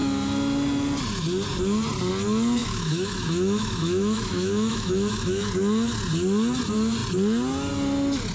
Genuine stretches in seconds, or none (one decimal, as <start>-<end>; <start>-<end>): 0.0-2.6; 5.5-8.3